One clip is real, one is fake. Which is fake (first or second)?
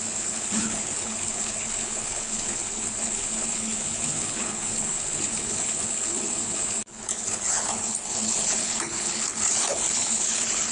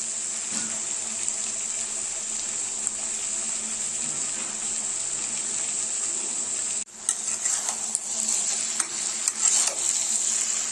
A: first